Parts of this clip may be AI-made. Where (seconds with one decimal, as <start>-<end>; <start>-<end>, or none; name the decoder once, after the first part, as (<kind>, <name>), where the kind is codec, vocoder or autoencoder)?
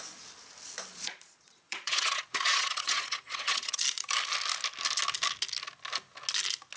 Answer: 0.9-3.8 (vocoder, Vocos)